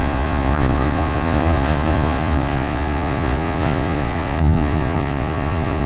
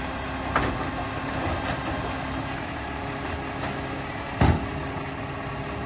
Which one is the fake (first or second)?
first